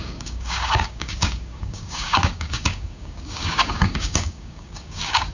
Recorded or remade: remade